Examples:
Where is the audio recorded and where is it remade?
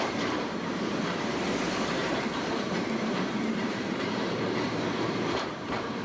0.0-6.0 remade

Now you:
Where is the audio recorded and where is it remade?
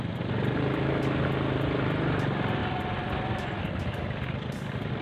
0.0-5.0 recorded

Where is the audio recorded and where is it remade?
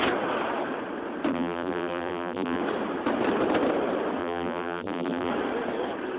0.0-1.3 recorded; 1.3-2.6 remade; 2.6-4.2 recorded; 4.2-5.3 remade; 5.3-6.2 recorded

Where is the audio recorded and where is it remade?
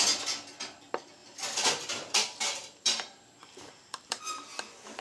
0.0-1.2 recorded; 1.2-4.2 remade; 4.2-5.0 recorded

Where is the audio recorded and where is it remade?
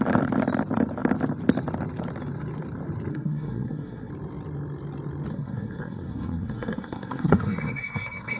0.0-3.1 recorded; 3.1-4.1 remade; 4.1-5.3 recorded; 5.3-8.4 remade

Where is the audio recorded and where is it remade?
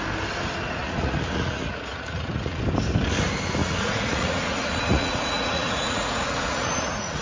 0.0-0.8 recorded; 0.8-2.6 remade; 2.6-3.6 recorded; 3.6-7.2 remade